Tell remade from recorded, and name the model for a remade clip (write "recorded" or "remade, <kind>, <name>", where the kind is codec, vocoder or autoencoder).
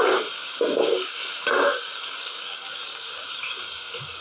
remade, codec, DAC